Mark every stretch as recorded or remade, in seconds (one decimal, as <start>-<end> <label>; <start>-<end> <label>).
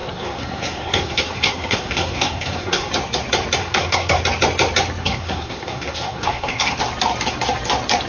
0.0-2.9 remade; 2.9-3.6 recorded; 3.6-4.2 remade; 4.2-5.0 recorded; 5.0-6.8 remade; 6.8-8.1 recorded